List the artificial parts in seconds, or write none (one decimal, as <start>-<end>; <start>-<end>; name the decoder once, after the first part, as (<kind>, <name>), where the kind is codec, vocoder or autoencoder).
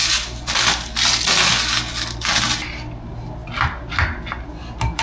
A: none